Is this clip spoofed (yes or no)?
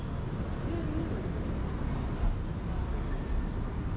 no